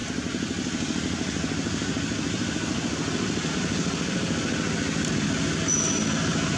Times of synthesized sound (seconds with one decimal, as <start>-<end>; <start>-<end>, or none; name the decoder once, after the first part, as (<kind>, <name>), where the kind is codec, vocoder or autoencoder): none